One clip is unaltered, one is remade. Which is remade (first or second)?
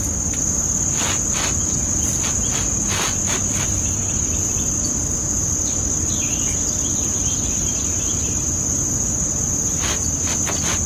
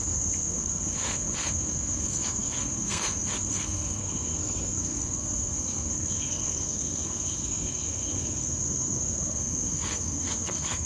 second